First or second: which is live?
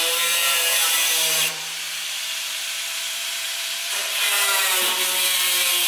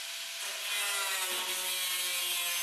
second